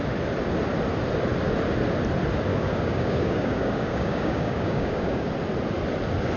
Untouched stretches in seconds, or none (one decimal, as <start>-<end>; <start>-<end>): 0.0-2.5; 5.3-6.4